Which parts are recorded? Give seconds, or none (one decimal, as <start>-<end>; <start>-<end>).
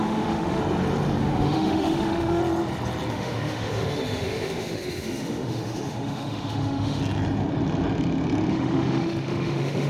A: 0.6-1.2; 2.4-3.1; 7.0-8.5